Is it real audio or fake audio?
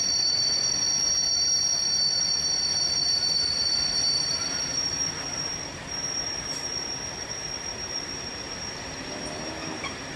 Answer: fake